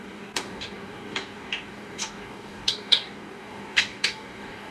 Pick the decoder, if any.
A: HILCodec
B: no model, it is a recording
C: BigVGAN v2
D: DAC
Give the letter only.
D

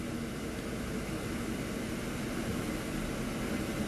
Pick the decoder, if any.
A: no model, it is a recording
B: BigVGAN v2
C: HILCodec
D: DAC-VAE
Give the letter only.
A